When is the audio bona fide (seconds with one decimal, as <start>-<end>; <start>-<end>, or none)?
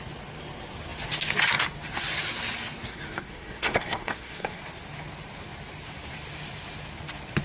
0.0-2.9; 4.6-7.4